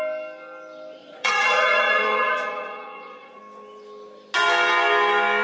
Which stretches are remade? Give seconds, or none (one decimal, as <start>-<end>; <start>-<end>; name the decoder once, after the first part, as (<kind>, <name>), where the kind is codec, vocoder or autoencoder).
1.0-3.4 (vocoder, Vocos)